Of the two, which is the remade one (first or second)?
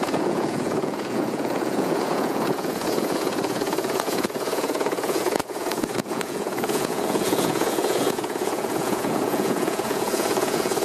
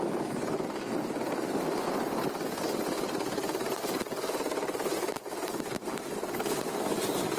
first